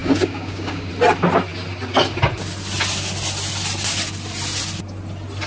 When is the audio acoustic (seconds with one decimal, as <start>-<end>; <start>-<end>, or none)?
0.9-5.5